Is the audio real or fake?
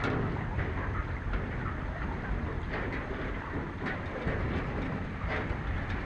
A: real